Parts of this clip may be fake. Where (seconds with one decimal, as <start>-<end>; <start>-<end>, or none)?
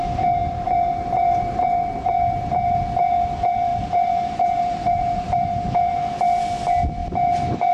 0.4-2.8; 3.7-5.7